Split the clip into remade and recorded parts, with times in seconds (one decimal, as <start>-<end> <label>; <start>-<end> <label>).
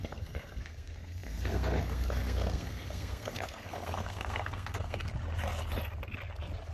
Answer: 0.0-5.1 remade; 5.1-6.7 recorded